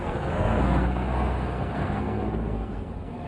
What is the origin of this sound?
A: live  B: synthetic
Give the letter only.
B